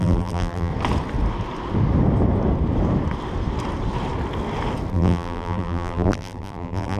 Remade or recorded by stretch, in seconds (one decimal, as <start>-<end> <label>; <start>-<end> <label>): 0.0-0.7 remade; 0.7-4.9 recorded; 4.9-7.0 remade